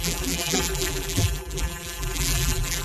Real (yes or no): no